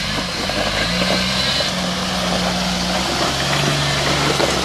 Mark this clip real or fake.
real